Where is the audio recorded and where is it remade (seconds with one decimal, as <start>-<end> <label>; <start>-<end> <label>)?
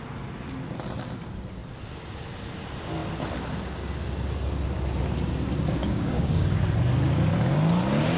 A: 0.0-5.8 recorded; 5.8-6.6 remade; 6.6-8.2 recorded